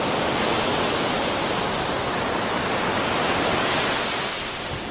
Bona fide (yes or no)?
yes